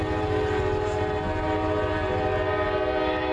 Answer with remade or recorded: recorded